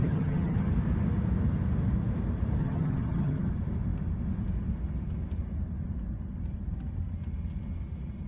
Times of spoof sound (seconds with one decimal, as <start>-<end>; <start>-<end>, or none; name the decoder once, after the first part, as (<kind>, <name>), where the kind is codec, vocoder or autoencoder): 0.0-0.7 (vocoder, HiFi-GAN); 2.6-3.5